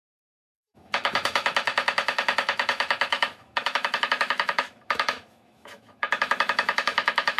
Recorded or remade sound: remade